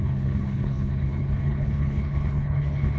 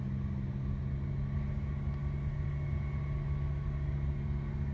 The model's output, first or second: first